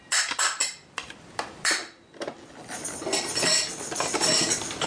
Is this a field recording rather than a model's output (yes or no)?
yes